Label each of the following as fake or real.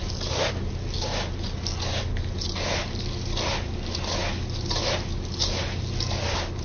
real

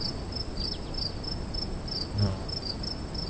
real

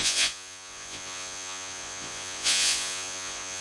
fake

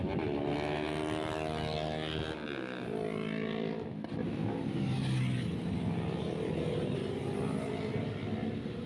real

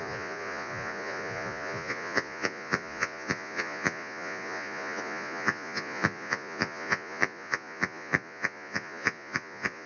fake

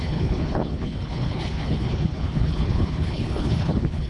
fake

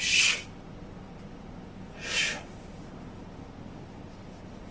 real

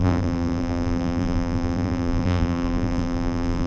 fake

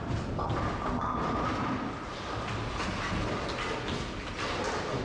real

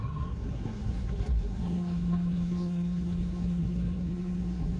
fake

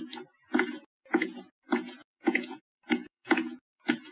fake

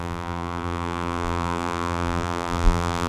fake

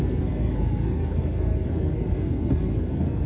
fake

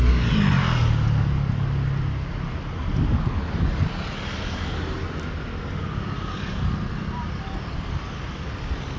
real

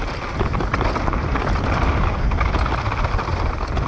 real